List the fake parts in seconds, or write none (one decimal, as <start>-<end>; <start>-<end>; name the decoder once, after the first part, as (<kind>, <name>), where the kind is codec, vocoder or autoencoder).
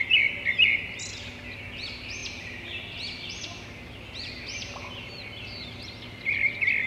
none